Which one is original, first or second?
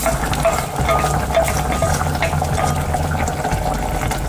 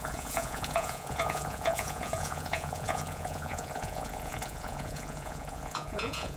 first